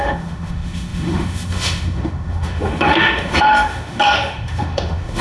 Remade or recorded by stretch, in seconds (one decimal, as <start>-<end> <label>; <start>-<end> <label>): 0.0-5.2 remade